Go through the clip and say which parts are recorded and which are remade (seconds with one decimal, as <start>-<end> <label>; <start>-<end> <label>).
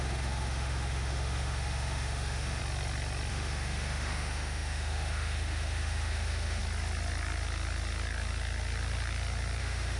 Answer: 0.0-2.6 remade; 2.6-3.3 recorded; 3.3-6.6 remade; 6.6-9.6 recorded; 9.6-10.0 remade